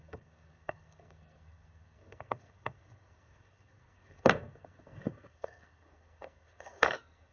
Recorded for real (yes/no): no